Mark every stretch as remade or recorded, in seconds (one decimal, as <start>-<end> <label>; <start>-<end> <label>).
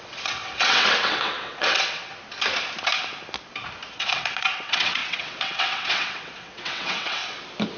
0.0-2.1 remade; 2.1-3.9 recorded; 3.9-7.2 remade; 7.2-7.8 recorded